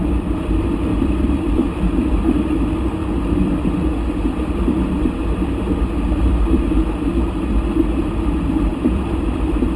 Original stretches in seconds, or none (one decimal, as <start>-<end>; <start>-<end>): 0.0-0.9; 2.4-8.7